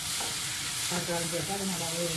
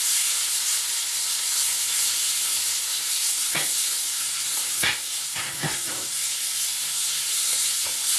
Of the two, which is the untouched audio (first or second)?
first